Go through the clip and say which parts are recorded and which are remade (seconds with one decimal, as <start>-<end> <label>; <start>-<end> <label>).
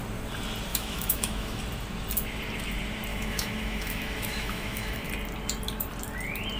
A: 0.0-0.7 recorded; 0.7-1.6 remade; 1.6-3.1 recorded; 3.1-5.1 remade; 5.1-6.6 recorded